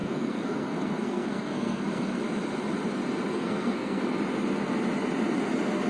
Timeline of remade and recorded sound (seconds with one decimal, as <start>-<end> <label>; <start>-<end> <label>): 0.0-2.2 remade; 2.2-3.3 recorded; 3.3-4.0 remade; 4.0-5.9 recorded